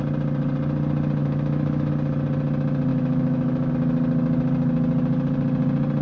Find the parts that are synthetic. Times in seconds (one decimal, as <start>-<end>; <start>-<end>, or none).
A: 1.2-1.9; 2.9-3.7